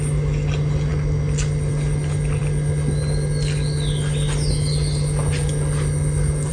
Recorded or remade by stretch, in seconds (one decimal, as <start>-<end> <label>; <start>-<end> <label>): 0.0-6.5 recorded